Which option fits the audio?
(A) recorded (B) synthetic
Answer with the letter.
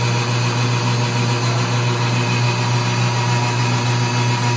A